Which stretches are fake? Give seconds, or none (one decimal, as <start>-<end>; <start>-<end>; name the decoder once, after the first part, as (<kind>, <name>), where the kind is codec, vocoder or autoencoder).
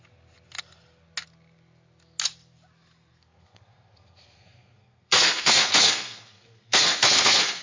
3.1-7.6 (codec, SNAC)